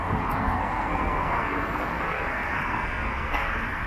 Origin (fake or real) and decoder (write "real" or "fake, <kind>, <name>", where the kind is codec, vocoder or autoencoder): fake, codec, SNAC